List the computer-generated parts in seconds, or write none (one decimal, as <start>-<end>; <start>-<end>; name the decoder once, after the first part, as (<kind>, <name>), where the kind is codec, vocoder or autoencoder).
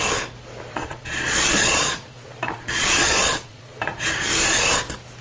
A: 0.7-3.8 (vocoder, Vocos)